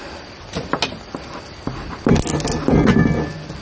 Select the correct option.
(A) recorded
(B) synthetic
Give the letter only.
A